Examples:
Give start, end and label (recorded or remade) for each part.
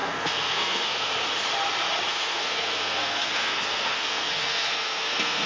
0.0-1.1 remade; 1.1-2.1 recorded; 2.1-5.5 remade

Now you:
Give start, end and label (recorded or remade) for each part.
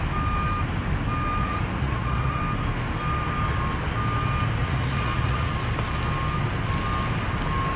0.0-1.4 recorded; 1.4-2.4 remade; 2.4-4.6 recorded; 4.6-5.5 remade; 5.5-7.8 recorded